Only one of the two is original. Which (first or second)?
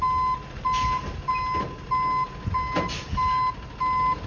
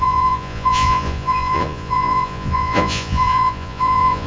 first